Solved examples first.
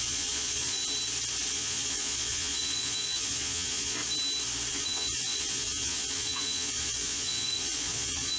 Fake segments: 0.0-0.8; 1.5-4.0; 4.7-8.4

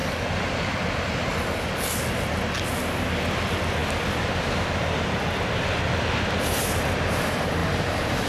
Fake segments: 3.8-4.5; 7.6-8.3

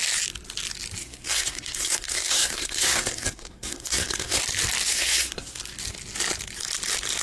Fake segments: 1.0-4.4; 4.9-5.6